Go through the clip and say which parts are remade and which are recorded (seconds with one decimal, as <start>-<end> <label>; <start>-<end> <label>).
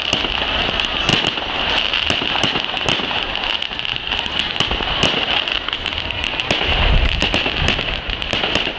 0.0-8.8 recorded